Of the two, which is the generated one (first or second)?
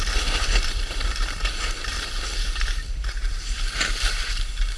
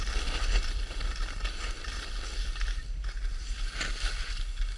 first